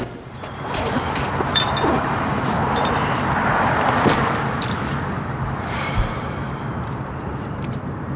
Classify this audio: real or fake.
fake